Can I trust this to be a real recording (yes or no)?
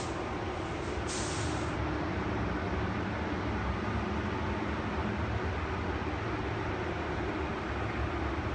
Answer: yes